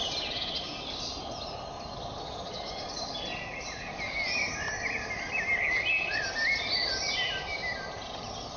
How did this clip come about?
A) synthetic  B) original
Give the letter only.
B